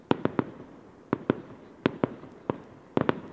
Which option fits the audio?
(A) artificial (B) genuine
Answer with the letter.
B